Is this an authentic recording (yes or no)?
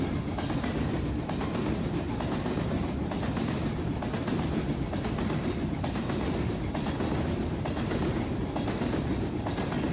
yes